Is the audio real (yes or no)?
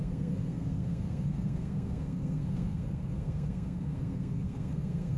no